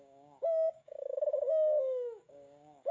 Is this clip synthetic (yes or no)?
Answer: yes